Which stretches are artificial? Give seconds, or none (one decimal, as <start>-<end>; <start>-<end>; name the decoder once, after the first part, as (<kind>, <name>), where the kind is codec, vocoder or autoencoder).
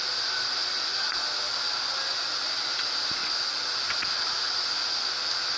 none